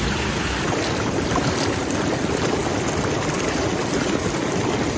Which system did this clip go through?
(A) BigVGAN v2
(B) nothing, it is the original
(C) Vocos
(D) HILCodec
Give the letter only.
B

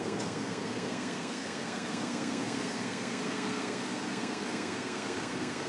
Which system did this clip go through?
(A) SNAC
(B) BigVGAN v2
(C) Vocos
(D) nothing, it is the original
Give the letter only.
A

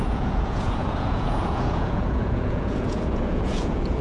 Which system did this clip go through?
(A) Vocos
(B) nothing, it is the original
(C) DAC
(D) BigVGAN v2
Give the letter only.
A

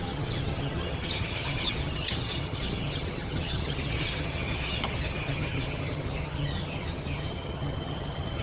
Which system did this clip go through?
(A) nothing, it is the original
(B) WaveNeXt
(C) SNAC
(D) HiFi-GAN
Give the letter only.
D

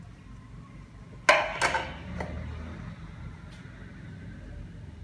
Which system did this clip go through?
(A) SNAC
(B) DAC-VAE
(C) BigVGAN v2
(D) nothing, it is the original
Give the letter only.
D